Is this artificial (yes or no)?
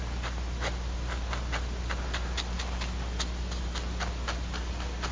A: no